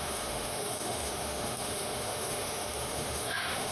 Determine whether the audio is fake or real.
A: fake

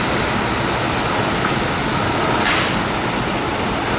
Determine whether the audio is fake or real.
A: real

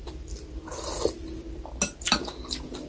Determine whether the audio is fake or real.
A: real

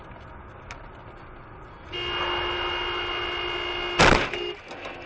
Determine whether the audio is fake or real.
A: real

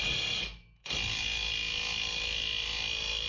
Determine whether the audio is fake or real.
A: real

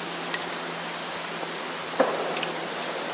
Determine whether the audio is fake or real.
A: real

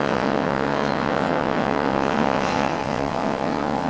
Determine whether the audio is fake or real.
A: fake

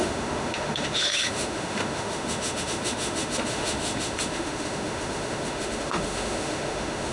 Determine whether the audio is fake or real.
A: fake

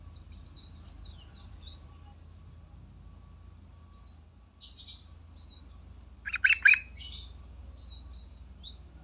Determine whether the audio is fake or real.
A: real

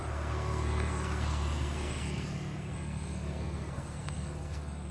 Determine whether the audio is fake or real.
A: fake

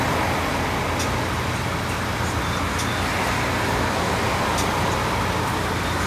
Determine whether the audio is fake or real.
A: real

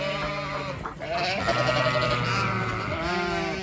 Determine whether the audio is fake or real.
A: real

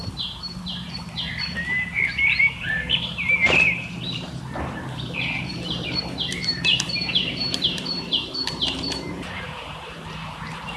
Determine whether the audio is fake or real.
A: fake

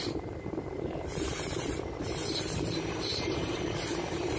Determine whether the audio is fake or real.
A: fake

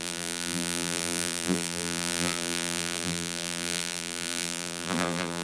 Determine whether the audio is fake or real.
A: fake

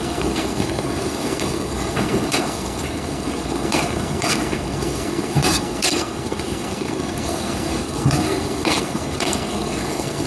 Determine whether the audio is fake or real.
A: fake